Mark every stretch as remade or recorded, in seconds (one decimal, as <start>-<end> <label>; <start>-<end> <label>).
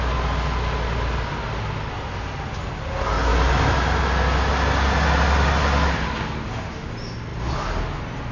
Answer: 0.0-8.3 recorded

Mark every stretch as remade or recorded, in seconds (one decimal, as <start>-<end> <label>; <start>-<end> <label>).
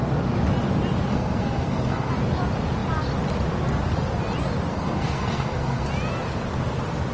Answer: 0.0-1.1 recorded; 1.1-2.1 remade; 2.1-4.7 recorded; 4.7-5.9 remade; 5.9-7.1 recorded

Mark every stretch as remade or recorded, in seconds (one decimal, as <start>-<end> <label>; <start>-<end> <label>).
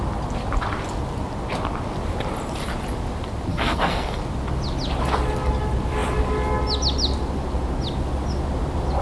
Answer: 0.0-3.5 recorded; 3.5-4.2 remade; 4.2-9.0 recorded